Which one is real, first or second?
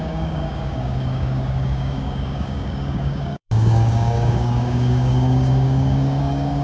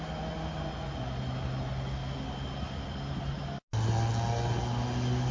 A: second